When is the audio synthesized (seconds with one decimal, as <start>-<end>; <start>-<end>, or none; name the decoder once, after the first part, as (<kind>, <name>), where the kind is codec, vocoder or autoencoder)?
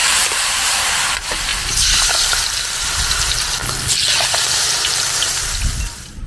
0.0-0.9 (vocoder, BigVGAN v2)